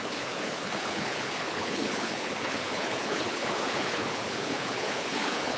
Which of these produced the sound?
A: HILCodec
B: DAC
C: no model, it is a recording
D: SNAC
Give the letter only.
A